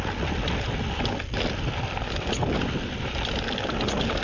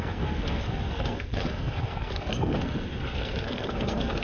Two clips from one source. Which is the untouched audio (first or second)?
first